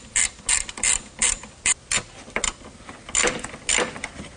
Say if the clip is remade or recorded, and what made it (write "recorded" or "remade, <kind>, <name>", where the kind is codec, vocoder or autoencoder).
recorded